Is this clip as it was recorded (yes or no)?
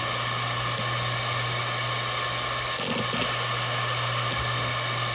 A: yes